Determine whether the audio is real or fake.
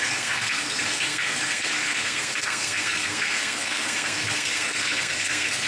fake